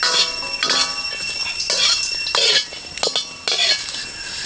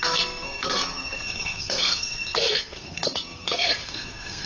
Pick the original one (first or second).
first